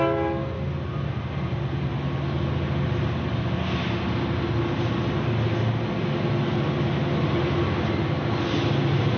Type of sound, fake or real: real